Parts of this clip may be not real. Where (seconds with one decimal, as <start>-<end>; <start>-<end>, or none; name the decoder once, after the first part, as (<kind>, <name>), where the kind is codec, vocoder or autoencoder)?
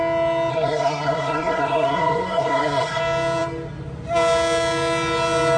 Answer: 0.5-3.0 (codec, SNAC)